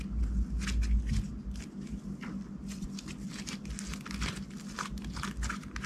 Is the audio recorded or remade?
recorded